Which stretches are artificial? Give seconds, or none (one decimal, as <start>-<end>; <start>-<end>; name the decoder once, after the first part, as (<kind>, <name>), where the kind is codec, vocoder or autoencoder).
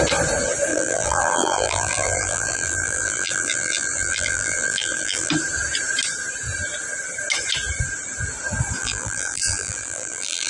0.7-5.3 (vocoder, BigVGAN v2); 8.8-10.5